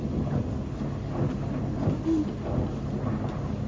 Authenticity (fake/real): real